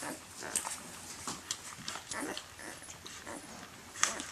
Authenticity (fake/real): real